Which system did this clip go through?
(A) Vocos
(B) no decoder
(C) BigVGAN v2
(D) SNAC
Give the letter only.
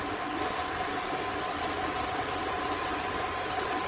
B